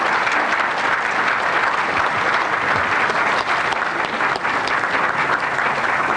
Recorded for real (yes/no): yes